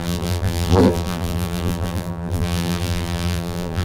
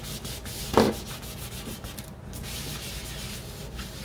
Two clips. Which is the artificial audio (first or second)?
first